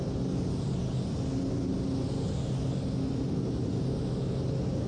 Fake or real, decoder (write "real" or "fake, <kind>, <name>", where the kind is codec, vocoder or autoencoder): real